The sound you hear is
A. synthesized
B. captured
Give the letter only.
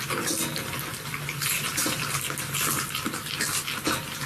B